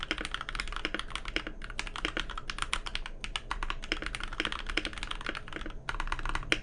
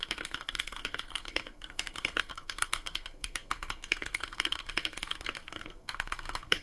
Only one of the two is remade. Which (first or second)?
second